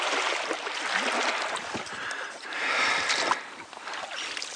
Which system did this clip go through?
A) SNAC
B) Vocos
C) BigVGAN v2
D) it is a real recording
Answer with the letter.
D